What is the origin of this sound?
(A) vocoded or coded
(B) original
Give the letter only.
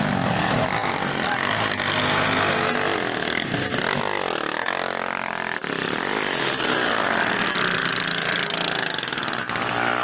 B